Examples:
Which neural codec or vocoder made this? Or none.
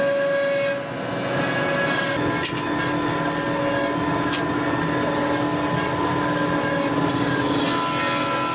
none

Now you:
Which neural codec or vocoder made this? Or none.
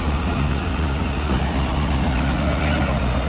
vocoder, Vocos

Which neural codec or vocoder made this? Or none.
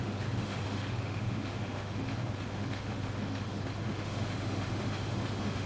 autoencoder, DAC-VAE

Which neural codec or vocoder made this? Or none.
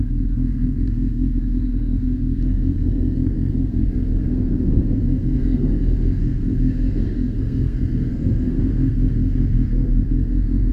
codec, SNAC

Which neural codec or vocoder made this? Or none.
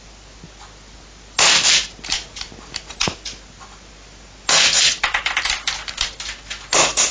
none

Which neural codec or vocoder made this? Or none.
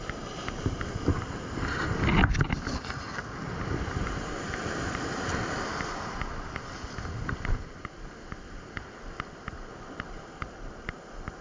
none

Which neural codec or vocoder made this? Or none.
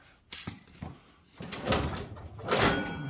none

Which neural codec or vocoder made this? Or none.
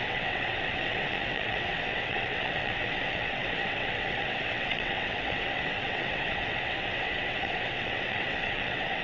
vocoder, WaveNeXt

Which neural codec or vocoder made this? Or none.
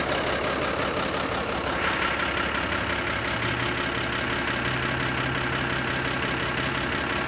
none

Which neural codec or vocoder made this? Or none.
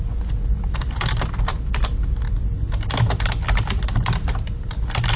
none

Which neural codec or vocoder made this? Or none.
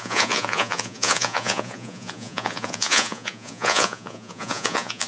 vocoder, Vocos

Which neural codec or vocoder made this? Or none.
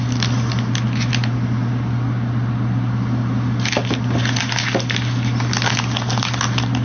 none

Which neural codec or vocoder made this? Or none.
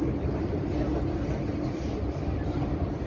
none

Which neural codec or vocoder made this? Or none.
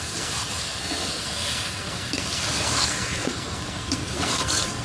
codec, SNAC